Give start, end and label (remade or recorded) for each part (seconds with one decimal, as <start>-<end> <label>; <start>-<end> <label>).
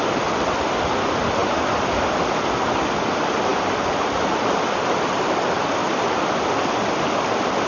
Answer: 0.0-7.7 recorded